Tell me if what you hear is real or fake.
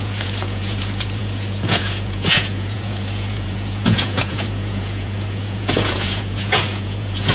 fake